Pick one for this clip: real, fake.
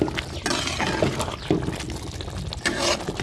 real